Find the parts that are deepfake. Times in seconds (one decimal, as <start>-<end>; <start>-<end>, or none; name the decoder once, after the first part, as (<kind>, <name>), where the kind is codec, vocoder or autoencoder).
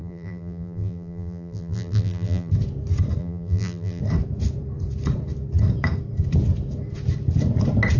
0.0-2.5 (vocoder, BigVGAN v2); 3.2-4.0